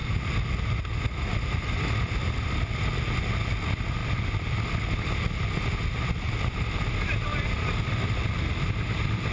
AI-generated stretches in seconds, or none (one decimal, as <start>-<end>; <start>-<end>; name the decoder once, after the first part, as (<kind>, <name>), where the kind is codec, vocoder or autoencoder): none